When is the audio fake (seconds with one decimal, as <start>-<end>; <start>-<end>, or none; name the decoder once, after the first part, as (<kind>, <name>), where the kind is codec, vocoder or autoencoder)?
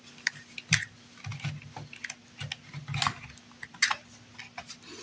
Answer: none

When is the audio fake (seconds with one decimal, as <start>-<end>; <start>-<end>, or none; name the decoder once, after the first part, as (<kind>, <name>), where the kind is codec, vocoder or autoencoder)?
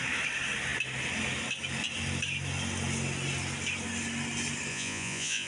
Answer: 4.7-5.5 (vocoder, Vocos)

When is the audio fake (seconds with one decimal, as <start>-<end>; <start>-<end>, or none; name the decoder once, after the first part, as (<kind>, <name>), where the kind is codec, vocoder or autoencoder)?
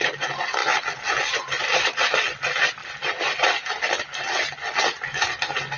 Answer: none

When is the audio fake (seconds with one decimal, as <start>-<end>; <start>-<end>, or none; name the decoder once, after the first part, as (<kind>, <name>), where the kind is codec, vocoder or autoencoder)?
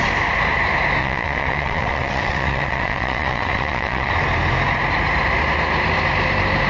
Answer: 1.0-4.1 (vocoder, WaveNeXt)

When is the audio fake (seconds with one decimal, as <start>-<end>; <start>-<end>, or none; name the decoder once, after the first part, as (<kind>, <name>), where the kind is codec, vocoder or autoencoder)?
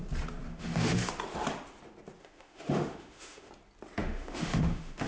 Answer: 0.5-1.1 (autoencoder, DAC-VAE); 2.2-3.5; 4.0-5.1